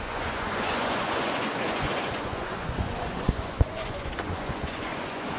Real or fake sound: fake